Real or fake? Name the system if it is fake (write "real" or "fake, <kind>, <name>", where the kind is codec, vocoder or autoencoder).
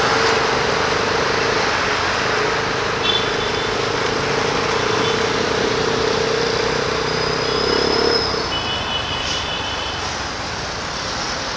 real